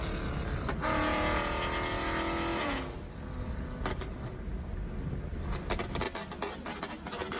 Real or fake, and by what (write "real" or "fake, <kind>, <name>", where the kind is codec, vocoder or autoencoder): real